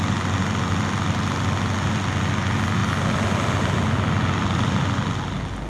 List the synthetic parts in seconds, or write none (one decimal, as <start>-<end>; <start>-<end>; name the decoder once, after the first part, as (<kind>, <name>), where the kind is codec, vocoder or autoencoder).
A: none